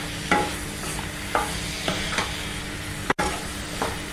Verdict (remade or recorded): recorded